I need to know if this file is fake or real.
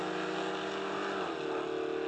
real